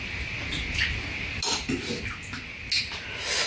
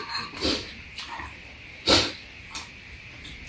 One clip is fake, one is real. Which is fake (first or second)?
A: second